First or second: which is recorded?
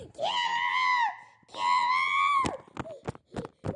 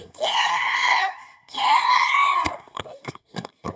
first